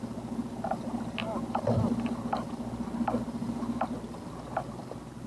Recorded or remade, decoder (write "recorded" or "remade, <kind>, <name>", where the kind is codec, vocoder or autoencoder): recorded